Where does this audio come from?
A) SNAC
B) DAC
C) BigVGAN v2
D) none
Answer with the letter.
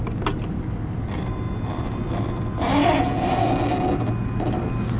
D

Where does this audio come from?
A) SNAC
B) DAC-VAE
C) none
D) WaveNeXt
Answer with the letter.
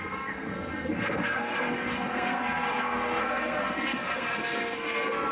A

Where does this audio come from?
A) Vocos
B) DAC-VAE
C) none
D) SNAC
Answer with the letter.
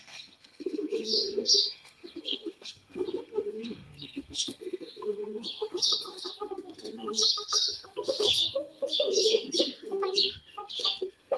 D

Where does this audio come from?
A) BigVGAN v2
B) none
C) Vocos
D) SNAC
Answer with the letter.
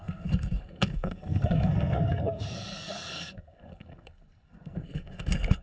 D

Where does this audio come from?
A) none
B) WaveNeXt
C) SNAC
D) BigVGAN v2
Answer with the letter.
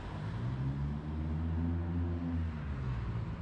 A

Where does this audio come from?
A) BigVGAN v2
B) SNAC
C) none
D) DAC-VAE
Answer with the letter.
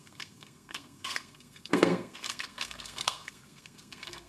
B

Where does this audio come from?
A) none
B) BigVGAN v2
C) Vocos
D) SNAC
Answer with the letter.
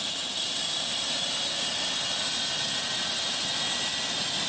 A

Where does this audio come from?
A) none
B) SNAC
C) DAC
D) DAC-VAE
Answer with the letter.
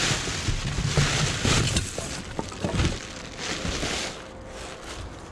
A